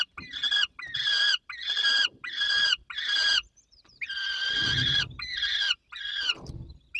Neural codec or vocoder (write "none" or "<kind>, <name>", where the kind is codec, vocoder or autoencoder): none